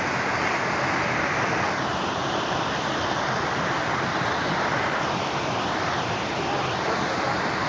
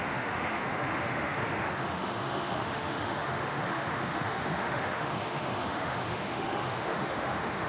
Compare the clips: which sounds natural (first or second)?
first